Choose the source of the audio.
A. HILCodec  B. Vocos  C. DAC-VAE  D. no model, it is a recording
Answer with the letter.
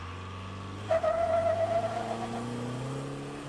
D